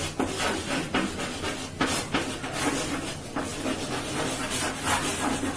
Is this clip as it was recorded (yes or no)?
yes